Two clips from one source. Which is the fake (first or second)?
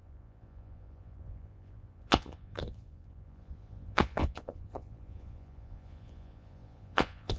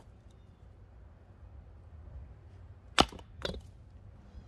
first